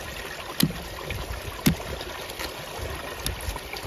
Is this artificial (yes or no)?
no